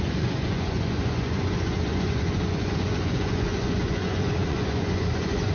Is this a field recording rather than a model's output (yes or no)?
no